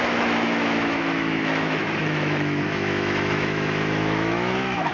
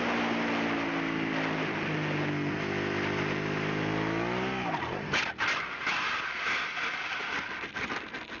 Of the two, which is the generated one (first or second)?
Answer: first